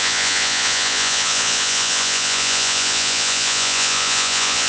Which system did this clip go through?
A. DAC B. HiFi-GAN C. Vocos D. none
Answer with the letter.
C